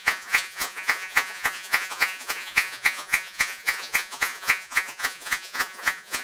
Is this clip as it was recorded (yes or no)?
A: no